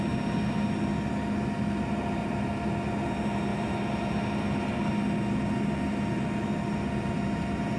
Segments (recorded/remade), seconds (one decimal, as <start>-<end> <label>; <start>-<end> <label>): 0.0-7.8 recorded